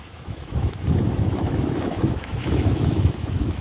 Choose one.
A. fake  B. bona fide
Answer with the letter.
A